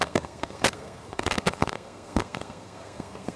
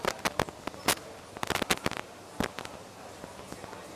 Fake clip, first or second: first